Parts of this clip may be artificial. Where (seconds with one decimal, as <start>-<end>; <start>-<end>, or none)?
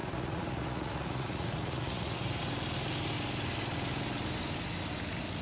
0.0-2.4